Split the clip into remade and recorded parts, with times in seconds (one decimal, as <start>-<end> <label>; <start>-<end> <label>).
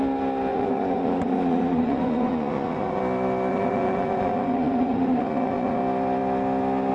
0.0-0.5 recorded; 0.5-3.0 remade; 3.0-3.5 recorded; 3.5-5.8 remade; 5.8-6.9 recorded